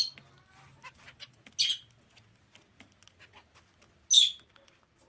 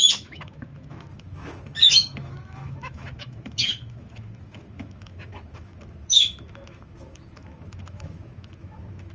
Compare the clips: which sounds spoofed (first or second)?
second